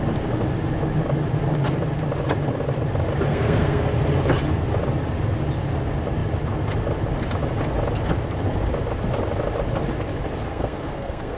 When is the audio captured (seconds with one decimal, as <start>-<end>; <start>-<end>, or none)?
0.0-3.3; 3.8-10.5